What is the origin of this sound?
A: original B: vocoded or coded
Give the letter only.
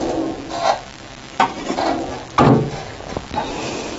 A